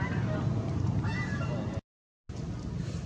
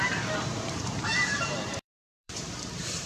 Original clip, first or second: first